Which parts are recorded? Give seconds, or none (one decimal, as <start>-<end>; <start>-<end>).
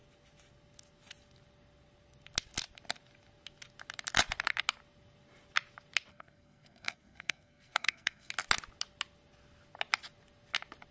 0.0-6.1; 8.3-10.9